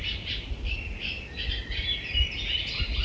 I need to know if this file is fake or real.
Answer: real